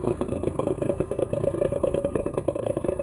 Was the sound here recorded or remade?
remade